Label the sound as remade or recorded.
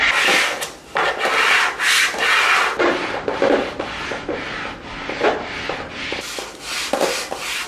recorded